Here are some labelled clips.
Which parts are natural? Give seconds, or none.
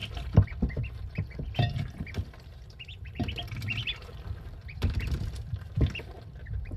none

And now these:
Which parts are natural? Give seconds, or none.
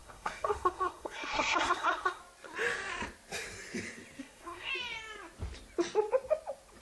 2.2-4.2; 4.7-6.8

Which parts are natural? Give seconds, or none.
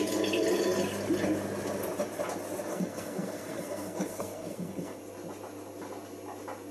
0.0-2.7; 5.0-6.7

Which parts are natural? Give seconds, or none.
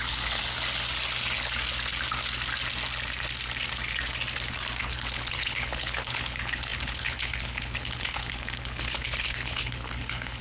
0.4-4.8